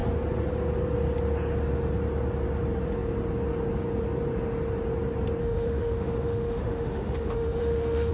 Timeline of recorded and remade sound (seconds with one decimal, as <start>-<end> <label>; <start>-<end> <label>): 0.0-5.4 recorded; 5.4-8.1 remade